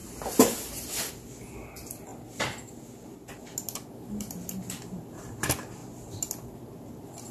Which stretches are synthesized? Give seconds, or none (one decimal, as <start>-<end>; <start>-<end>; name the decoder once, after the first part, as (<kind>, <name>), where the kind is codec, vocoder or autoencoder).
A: 0.0-1.1 (vocoder, BigVGAN v2)